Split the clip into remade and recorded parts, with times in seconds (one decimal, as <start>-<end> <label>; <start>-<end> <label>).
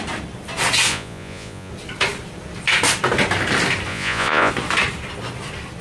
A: 0.0-0.9 recorded; 0.9-1.7 remade; 1.7-3.9 recorded; 3.9-4.5 remade; 4.5-5.8 recorded